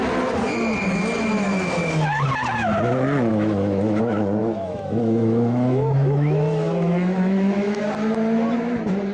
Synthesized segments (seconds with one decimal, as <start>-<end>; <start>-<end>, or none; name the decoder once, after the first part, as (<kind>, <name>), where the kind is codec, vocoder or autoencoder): 3.3-4.0 (autoencoder, DAC-VAE); 4.4-7.8